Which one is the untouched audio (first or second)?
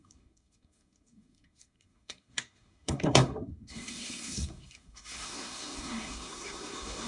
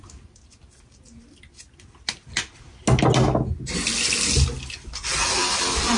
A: second